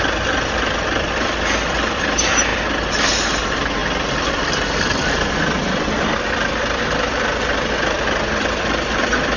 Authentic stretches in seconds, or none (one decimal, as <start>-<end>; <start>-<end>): 2.5-3.4; 3.8-4.3